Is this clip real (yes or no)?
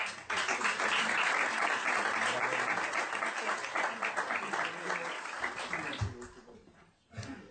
yes